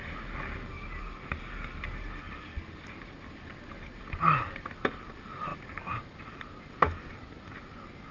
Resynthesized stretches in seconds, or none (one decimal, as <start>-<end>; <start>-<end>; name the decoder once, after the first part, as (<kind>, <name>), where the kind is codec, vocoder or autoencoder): none